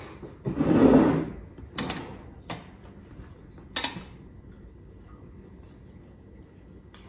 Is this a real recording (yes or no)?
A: yes